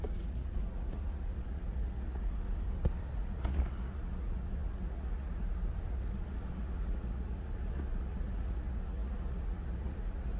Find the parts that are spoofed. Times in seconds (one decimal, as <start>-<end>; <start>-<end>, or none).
0.0-10.4